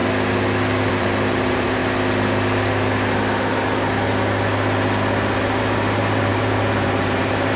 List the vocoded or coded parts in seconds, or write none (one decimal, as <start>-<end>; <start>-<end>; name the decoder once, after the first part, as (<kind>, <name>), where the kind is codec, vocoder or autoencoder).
0.9-1.8 (vocoder, BigVGAN v2); 5.6-7.6